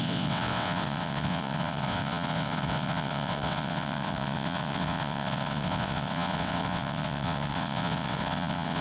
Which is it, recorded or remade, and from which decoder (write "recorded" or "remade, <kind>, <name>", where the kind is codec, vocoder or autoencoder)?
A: remade, vocoder, WaveNeXt